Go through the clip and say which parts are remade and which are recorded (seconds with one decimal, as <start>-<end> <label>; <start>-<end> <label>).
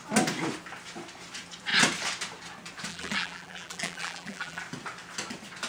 0.0-2.9 recorded; 2.9-4.6 remade; 4.6-5.7 recorded